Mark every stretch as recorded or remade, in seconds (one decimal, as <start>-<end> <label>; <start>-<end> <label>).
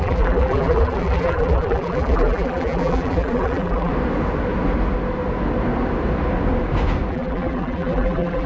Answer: 0.0-3.9 remade; 3.9-7.1 recorded; 7.1-8.5 remade